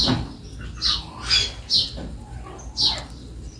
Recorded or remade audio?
recorded